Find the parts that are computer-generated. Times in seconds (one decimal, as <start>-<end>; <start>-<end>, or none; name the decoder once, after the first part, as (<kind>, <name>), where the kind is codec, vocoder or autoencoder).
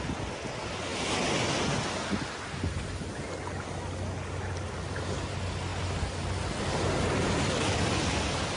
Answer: none